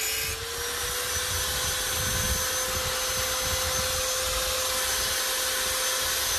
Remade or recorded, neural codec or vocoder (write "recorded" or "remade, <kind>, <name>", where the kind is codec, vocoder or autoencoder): recorded